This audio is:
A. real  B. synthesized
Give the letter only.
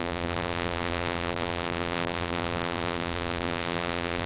B